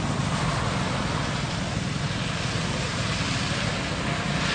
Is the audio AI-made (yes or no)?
no